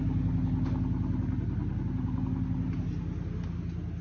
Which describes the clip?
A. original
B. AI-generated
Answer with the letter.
A